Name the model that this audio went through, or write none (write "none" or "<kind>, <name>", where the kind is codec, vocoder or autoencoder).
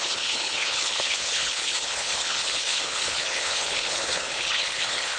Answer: codec, HILCodec